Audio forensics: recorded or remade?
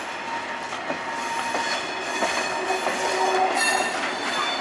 recorded